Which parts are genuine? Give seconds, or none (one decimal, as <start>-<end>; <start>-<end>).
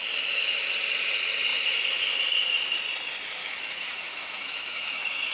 0.0-3.4